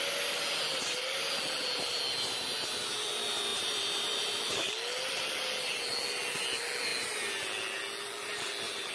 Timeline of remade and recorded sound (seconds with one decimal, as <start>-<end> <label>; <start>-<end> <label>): 0.0-3.5 recorded; 3.5-4.7 remade; 4.7-8.9 recorded